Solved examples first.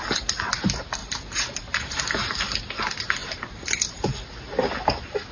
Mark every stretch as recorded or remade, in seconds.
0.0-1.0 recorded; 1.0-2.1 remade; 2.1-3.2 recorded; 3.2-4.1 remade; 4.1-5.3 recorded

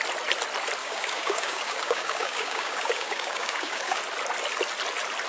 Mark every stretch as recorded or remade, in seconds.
0.0-0.8 recorded; 0.8-4.0 remade; 4.0-5.3 recorded

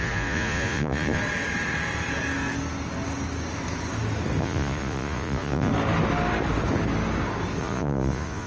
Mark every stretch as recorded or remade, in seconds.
0.0-1.2 remade; 1.2-4.4 recorded; 4.4-5.7 remade; 5.7-7.6 recorded; 7.6-8.5 remade

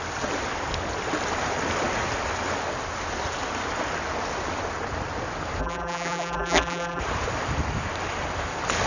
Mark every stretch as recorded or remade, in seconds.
0.0-5.6 recorded; 5.6-7.0 remade; 7.0-8.9 recorded